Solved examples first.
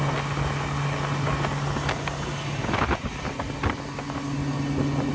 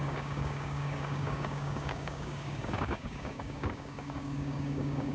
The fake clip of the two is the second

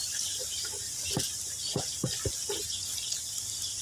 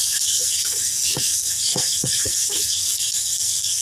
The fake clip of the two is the second